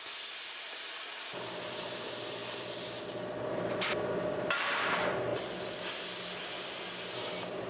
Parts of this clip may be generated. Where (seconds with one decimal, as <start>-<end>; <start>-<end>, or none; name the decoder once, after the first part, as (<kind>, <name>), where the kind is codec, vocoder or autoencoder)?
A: none